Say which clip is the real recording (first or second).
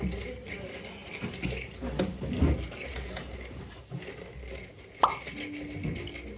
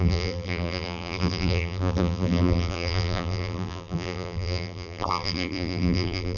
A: first